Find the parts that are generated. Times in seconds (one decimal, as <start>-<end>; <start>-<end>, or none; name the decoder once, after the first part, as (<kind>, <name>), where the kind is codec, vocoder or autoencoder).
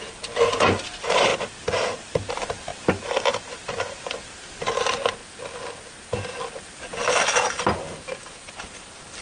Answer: 0.0-1.3 (vocoder, BigVGAN v2); 2.3-5.2; 6.5-6.9; 8.3-9.2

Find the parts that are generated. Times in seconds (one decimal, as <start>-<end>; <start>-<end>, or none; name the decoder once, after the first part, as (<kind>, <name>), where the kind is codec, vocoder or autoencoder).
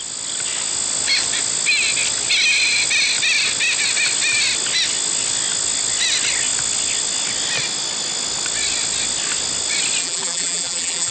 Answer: 10.0-11.1 (vocoder, BigVGAN v2)